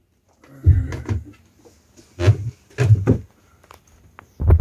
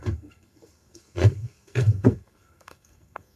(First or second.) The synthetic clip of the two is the second